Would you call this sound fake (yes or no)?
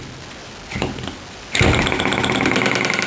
no